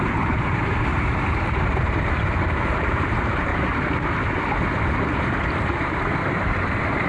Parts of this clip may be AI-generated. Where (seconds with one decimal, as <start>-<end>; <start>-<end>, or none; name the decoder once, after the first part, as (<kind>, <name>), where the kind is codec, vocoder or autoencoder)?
0.0-3.5 (vocoder, BigVGAN v2); 5.4-7.1